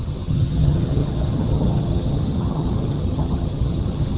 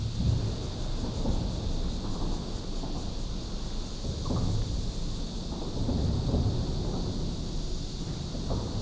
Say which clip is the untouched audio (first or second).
second